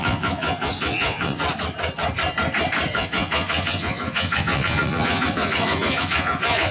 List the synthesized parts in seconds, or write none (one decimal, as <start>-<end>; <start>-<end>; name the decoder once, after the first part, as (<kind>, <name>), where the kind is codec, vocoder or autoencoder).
0.0-1.4 (vocoder, Vocos); 2.9-6.7

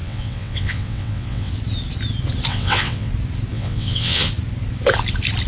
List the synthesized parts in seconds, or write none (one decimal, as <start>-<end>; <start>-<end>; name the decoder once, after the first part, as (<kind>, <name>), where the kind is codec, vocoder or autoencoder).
0.0-1.5 (vocoder, WaveNeXt); 2.5-3.1; 3.5-4.3

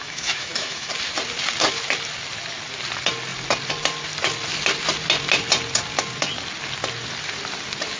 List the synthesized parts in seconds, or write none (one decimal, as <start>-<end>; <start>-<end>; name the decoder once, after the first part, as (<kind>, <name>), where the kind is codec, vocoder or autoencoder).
0.0-0.9 (autoencoder, DAC-VAE)